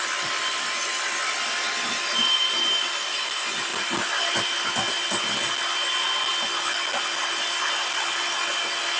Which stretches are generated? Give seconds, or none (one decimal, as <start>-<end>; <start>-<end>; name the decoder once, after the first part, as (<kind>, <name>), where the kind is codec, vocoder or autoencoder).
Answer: none